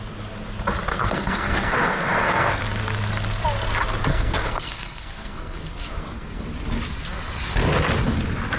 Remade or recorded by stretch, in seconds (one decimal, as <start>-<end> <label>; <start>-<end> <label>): 0.0-0.9 recorded; 0.9-2.6 remade; 2.6-4.1 recorded; 4.1-6.4 remade; 6.4-8.6 recorded